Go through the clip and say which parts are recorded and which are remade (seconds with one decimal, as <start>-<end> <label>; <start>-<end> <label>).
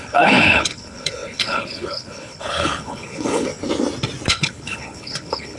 0.0-3.5 remade; 3.5-4.3 recorded; 4.3-5.6 remade